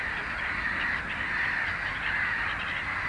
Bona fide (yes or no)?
yes